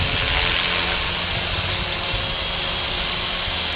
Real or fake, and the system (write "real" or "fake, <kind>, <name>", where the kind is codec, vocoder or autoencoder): real